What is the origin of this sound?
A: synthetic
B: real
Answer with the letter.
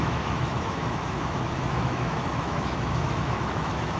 A